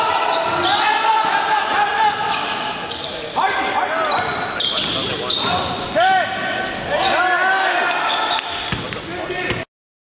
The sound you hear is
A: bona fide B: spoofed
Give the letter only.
A